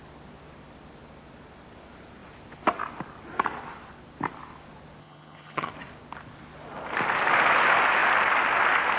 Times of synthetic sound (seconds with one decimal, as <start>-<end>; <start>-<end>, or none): 5.0-5.7